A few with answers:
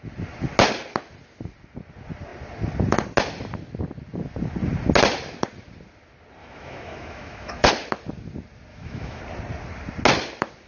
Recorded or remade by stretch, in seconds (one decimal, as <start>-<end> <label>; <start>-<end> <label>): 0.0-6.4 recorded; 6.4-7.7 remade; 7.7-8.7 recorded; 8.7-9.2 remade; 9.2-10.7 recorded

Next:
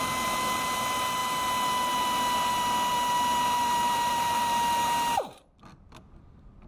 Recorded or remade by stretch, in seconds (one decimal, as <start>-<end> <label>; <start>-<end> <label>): 0.0-2.9 recorded; 2.9-5.5 remade; 5.5-6.7 recorded

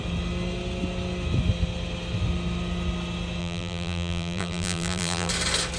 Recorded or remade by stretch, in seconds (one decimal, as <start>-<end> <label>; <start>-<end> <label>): 0.0-3.4 recorded; 3.4-5.3 remade; 5.3-5.8 recorded